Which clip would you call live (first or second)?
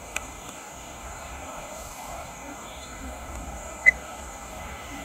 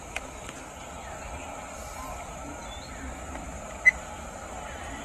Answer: second